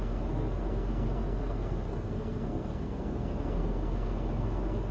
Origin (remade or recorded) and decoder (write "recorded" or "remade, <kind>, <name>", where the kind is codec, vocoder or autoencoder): remade, codec, SNAC